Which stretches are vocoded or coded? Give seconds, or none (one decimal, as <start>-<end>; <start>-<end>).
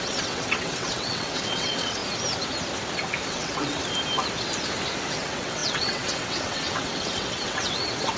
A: 0.0-2.0; 3.3-3.8; 5.1-8.2